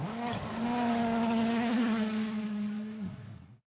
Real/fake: fake